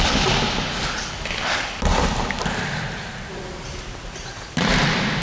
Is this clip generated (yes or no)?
no